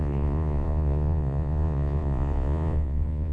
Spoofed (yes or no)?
yes